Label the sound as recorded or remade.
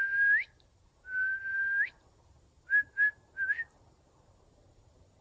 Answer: recorded